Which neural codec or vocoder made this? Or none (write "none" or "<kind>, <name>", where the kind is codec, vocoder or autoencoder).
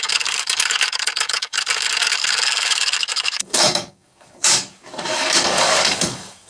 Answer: codec, DAC